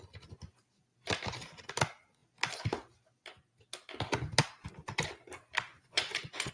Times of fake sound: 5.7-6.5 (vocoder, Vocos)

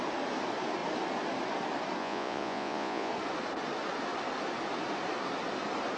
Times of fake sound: 2.0-3.1 (vocoder, Vocos)

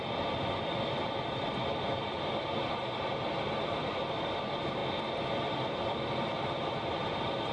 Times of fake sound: 0.0-4.8 (vocoder, BigVGAN v2); 5.7-7.5

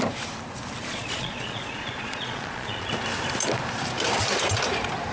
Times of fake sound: 0.8-2.9 (vocoder, Vocos)